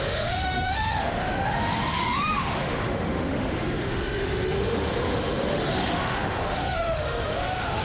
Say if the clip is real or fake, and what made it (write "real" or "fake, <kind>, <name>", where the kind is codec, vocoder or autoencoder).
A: fake, autoencoder, DAC-VAE